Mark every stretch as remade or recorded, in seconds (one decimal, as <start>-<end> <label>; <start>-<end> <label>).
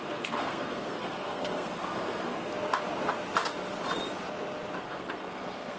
0.0-2.5 remade; 2.5-4.8 recorded; 4.8-5.8 remade